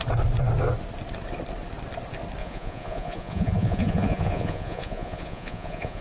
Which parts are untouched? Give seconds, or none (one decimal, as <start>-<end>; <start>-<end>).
0.0-2.4